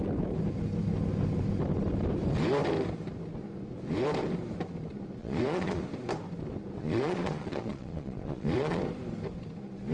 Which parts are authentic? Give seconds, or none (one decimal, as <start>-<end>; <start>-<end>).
0.0-5.2; 5.8-6.8; 8.8-9.9